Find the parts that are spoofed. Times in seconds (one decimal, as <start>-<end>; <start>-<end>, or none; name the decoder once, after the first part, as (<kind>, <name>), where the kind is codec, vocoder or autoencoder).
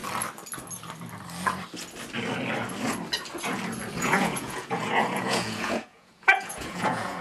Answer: 4.0-7.2 (vocoder, Vocos)